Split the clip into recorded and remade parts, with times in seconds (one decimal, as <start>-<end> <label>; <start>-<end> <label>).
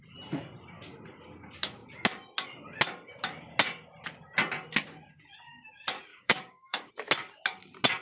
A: 0.0-6.1 recorded; 6.1-6.9 remade; 6.9-8.0 recorded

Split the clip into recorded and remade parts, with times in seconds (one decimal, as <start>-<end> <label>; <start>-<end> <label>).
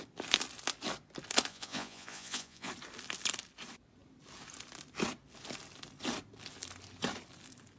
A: 0.0-1.5 recorded; 1.5-2.7 remade; 2.7-7.8 recorded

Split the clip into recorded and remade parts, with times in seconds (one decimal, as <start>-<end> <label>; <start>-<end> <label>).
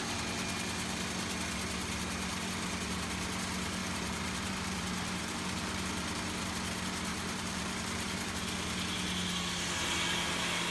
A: 0.0-3.8 recorded; 3.8-6.4 remade; 6.4-7.1 recorded; 7.1-8.3 remade; 8.3-10.7 recorded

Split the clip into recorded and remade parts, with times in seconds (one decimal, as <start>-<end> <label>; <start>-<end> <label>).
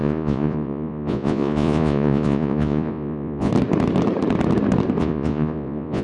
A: 0.0-3.5 remade; 3.5-5.0 recorded; 5.0-6.0 remade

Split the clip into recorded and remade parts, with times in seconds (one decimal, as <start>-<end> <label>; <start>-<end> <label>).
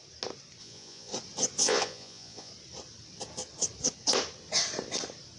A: 0.0-0.6 recorded; 0.6-1.1 remade; 1.1-1.6 recorded; 1.6-2.5 remade; 2.5-5.4 recorded